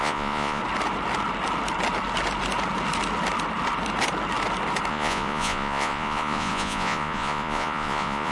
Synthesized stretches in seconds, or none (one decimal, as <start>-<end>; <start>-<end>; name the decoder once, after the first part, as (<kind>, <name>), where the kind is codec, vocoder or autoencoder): 0.0-0.6 (vocoder, Vocos); 4.9-8.3